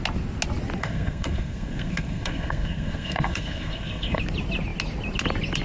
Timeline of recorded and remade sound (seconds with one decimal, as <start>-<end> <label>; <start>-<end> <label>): 0.0-0.8 recorded; 0.8-4.2 remade; 4.2-5.6 recorded